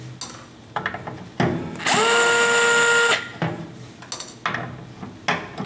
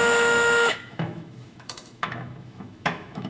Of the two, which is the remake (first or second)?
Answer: second